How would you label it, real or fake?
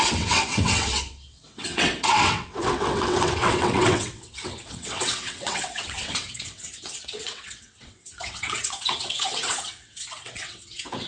fake